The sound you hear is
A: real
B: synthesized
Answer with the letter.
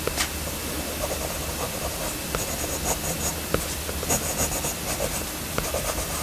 A